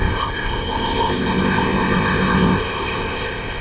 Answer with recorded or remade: remade